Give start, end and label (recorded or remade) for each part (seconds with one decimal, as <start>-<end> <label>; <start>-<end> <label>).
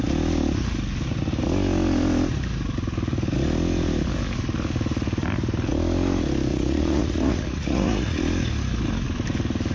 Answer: 0.0-6.5 recorded; 6.5-8.2 remade; 8.2-9.7 recorded